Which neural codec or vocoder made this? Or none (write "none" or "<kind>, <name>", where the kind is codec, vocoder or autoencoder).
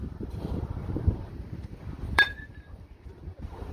vocoder, BigVGAN v2